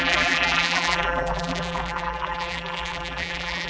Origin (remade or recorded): remade